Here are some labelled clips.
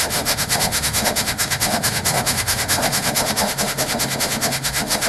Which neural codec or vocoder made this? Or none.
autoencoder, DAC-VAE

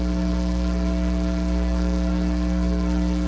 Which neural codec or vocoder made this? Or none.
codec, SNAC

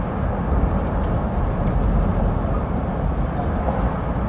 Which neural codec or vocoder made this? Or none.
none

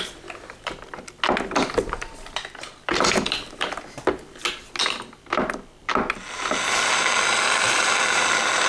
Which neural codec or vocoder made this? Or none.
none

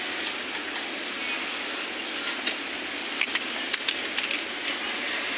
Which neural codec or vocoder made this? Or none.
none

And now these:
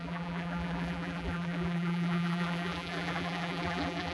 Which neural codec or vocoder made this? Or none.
vocoder, BigVGAN v2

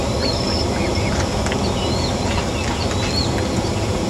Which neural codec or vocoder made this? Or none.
none